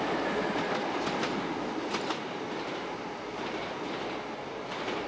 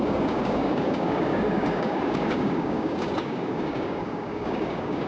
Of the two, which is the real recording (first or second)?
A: first